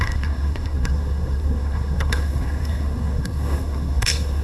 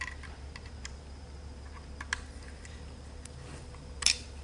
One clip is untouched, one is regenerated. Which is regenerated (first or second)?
first